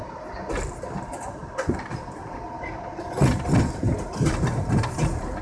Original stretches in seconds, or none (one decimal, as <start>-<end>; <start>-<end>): 0.0-5.4

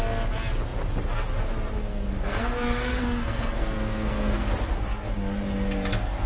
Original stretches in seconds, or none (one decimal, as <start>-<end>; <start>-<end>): 0.0-1.8; 4.5-6.3

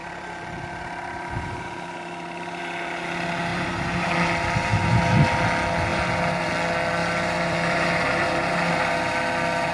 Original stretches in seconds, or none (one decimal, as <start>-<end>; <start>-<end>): 2.6-3.5; 4.1-5.9; 6.5-7.0; 8.7-9.7

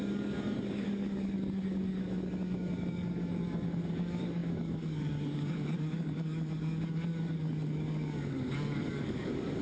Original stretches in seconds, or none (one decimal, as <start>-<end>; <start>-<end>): none

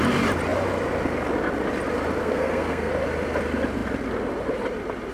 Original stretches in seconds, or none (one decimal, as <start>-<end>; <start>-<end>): 0.0-2.2; 2.9-5.1

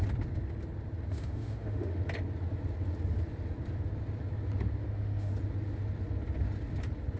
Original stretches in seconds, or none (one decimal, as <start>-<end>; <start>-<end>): 0.0-1.1; 2.0-4.8; 5.3-7.2

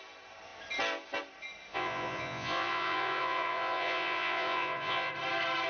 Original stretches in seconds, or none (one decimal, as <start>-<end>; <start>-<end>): 0.0-1.7; 5.1-5.7